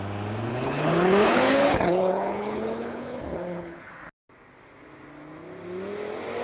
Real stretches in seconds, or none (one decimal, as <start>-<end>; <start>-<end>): 0.0-0.5; 3.9-6.4